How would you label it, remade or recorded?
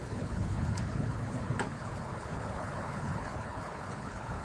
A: remade